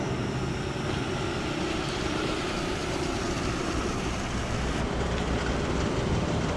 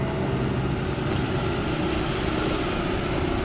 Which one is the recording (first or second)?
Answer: second